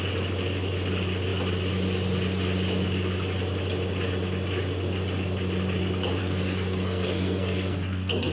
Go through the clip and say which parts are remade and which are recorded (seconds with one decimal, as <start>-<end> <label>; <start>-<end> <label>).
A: 0.0-6.2 recorded; 6.2-8.3 remade